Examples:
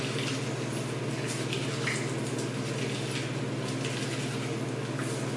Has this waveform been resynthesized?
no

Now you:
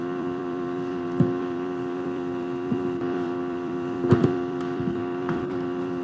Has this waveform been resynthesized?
yes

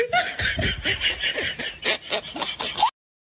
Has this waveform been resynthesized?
no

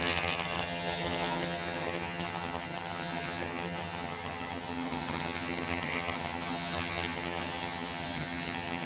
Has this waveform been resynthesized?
yes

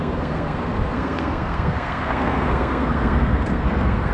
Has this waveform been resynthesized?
yes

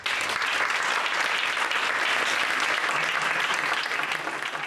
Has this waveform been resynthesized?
no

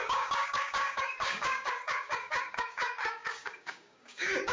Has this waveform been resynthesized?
yes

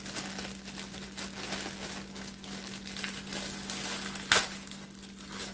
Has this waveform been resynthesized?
no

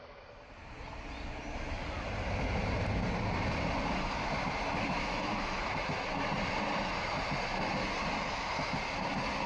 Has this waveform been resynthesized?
no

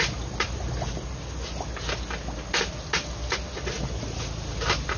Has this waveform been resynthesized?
no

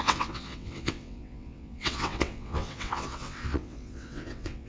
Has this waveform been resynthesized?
yes